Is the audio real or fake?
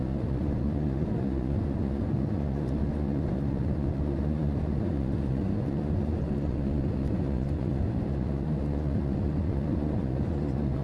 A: fake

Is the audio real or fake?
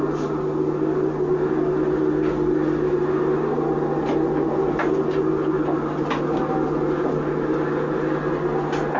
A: real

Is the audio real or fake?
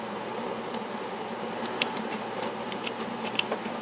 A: fake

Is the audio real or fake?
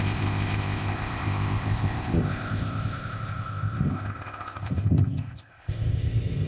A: fake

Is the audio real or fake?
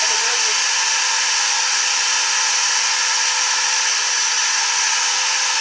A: real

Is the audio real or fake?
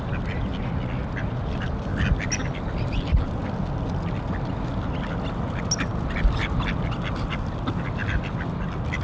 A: real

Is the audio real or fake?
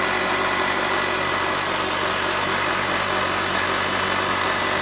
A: real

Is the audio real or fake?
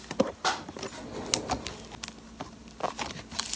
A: real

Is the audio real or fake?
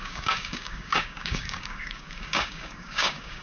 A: fake